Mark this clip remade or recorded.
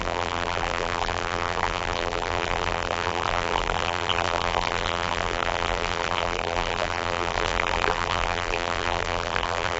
remade